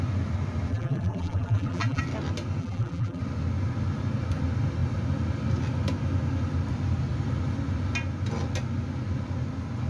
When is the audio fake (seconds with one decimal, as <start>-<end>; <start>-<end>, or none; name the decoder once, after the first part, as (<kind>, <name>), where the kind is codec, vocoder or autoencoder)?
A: 0.7-2.0 (vocoder, BigVGAN v2); 2.6-3.2